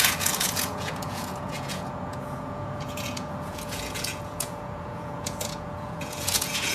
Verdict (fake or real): fake